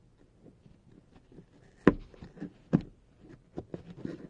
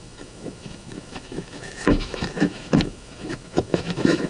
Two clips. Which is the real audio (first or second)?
first